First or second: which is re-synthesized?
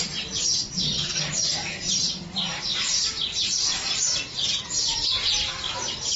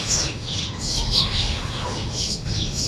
second